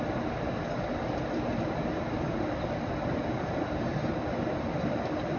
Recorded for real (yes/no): yes